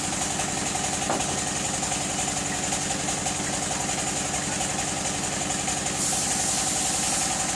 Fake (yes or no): no